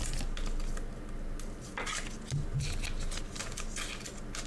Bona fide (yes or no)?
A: yes